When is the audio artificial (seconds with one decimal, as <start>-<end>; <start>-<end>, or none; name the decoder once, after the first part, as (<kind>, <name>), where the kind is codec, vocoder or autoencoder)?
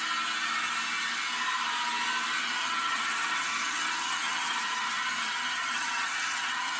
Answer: 2.4-6.8 (vocoder, HiFi-GAN)